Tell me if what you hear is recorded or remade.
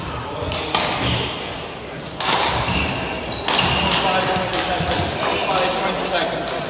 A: recorded